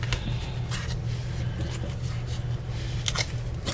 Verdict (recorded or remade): recorded